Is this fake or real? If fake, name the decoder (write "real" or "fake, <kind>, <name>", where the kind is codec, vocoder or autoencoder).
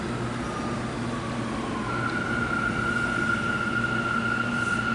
real